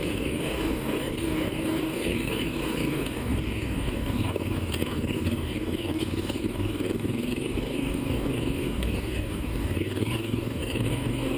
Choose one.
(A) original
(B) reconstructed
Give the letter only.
B